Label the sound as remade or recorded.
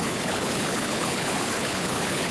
remade